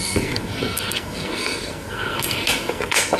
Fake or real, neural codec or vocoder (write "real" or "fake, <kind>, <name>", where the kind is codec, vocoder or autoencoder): fake, codec, SNAC